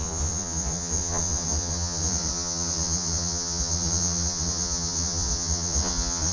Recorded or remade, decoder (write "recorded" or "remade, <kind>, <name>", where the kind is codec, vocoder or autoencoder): remade, vocoder, Vocos